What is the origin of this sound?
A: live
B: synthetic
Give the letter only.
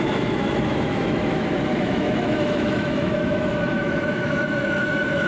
B